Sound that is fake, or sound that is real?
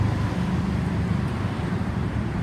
fake